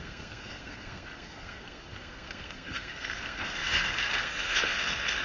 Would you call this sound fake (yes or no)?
yes